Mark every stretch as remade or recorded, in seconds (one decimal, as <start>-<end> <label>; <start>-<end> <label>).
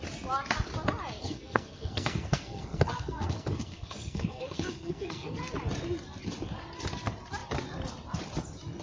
0.0-1.2 recorded; 1.2-5.5 remade; 5.5-8.8 recorded